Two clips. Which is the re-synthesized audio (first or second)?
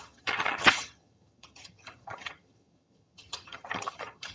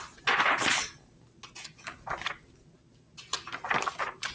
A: first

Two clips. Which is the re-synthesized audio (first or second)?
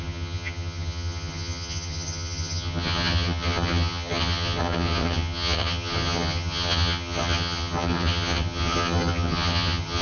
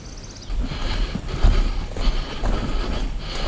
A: first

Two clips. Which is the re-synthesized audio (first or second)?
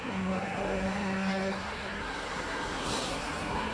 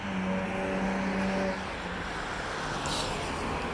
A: first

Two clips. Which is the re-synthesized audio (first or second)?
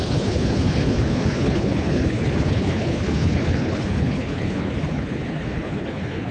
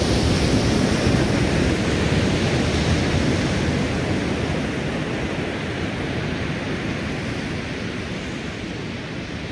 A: first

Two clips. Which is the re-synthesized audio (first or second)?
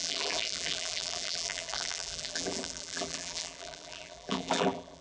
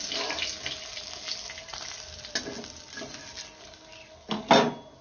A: first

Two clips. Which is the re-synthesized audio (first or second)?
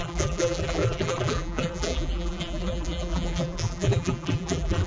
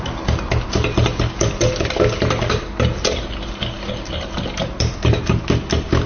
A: first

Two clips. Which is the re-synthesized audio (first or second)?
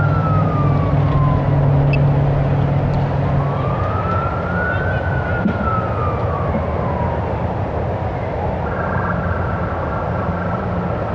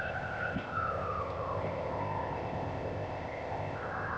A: second